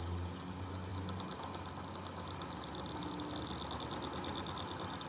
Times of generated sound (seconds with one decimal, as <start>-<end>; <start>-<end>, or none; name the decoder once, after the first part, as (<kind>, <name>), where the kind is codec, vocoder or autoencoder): none